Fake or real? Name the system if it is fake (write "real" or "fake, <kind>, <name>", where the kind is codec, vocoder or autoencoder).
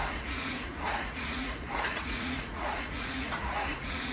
fake, vocoder, Vocos